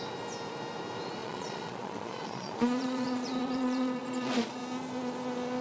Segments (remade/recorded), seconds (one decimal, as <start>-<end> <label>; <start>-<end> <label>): 0.0-1.2 recorded; 1.2-4.6 remade; 4.6-5.6 recorded